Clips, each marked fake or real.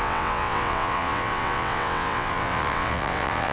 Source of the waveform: fake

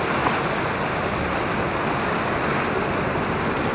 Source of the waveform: real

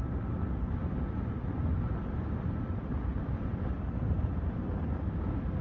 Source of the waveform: real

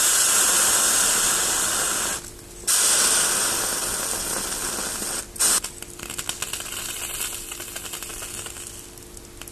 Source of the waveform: real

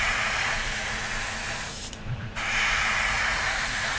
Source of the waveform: fake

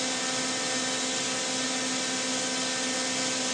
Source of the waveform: real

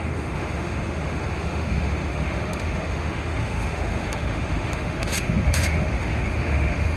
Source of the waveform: fake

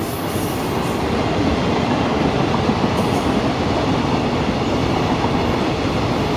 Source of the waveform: real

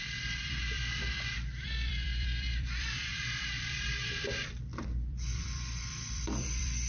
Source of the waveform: fake